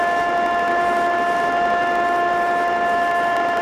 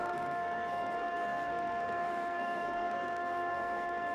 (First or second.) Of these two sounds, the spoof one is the second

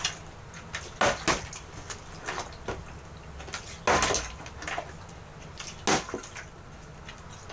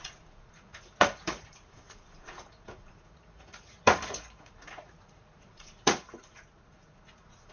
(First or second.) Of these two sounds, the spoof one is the second